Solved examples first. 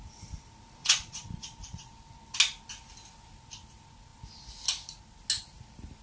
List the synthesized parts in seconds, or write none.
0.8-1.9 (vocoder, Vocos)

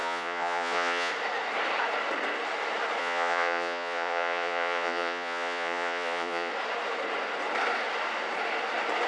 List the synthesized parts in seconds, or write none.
0.0-1.1 (vocoder, Vocos); 3.0-6.5

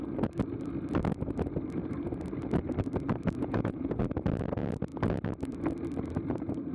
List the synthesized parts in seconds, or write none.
3.4-4.0 (vocoder, Vocos)